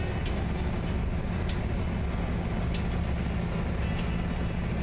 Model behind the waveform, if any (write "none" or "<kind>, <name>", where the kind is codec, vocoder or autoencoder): none